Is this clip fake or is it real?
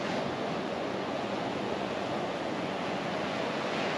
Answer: fake